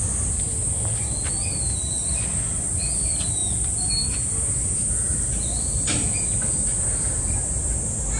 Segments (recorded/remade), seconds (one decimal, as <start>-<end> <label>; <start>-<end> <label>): 0.0-8.2 recorded